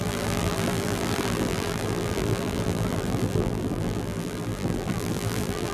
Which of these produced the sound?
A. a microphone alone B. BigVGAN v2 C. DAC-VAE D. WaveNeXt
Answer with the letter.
B